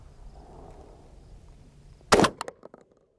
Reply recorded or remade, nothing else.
recorded